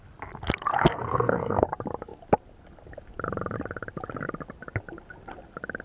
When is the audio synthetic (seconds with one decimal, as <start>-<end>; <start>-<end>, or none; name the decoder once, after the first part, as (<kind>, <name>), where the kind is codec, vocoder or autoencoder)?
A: 0.7-1.7 (codec, SNAC)